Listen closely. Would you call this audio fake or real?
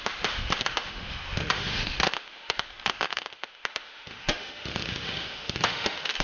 fake